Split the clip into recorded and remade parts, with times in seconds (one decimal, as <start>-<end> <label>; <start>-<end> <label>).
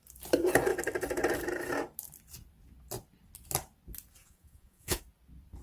0.0-4.2 recorded; 4.2-5.0 remade; 5.0-5.6 recorded